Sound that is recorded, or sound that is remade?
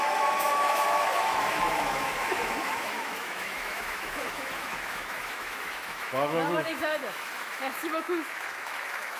remade